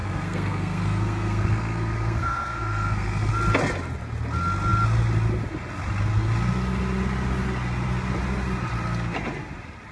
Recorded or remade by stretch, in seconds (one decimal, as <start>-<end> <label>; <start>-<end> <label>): 0.0-3.3 remade; 3.3-9.9 recorded